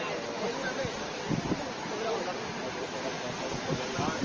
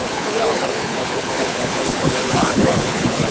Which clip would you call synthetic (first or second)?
second